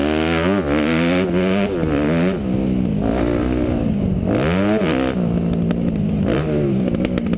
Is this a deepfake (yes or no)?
no